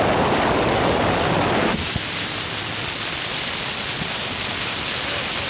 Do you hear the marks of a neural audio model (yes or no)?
no